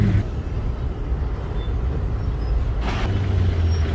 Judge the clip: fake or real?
real